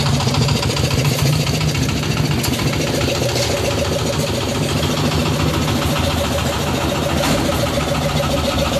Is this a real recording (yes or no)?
yes